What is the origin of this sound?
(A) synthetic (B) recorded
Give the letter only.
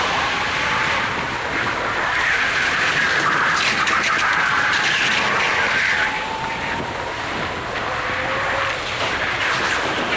B